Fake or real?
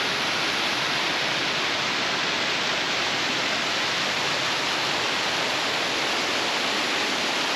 real